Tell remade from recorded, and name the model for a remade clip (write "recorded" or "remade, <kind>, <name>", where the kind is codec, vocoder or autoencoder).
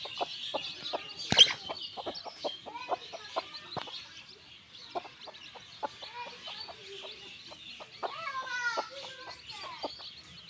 recorded